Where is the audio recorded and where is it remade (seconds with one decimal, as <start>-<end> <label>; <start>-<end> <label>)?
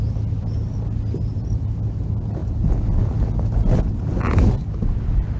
0.0-5.4 recorded